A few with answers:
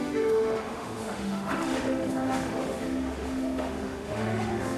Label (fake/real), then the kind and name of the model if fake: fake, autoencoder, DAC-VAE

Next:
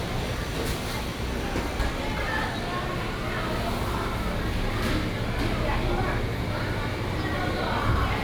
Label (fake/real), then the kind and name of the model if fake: real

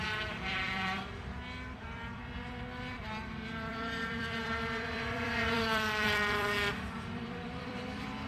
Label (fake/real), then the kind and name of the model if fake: fake, vocoder, BigVGAN v2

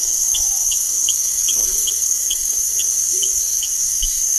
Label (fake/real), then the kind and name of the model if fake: fake, codec, SNAC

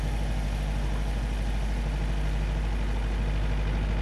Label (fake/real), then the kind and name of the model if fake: real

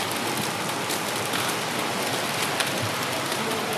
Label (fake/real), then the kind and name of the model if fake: real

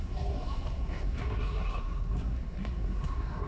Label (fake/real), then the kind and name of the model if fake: fake, codec, SNAC